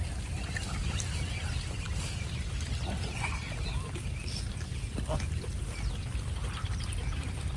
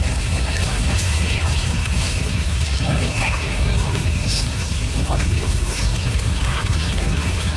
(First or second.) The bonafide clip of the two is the first